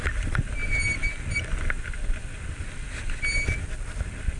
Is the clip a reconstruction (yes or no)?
no